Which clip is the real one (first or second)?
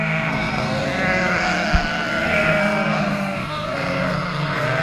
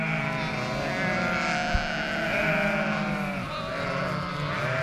second